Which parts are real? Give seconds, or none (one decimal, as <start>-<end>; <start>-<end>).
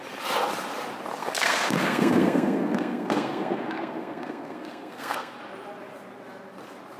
0.0-1.2; 5.4-7.0